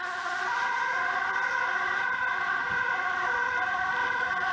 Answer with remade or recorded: remade